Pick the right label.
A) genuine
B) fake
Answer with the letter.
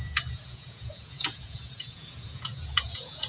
B